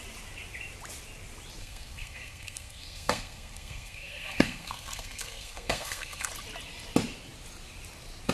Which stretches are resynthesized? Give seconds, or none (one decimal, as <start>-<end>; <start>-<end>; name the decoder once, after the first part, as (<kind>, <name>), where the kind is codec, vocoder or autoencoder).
1.6-6.3 (codec, SNAC)